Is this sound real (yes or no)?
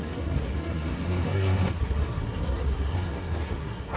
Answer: no